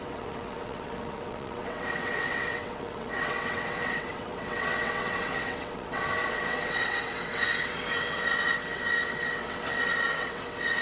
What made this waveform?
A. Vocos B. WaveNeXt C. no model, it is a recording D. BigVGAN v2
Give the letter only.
B